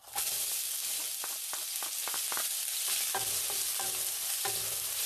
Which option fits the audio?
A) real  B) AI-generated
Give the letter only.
A